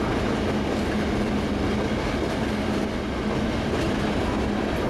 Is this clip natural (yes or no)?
yes